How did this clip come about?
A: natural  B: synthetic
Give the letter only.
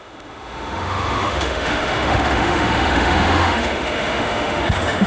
B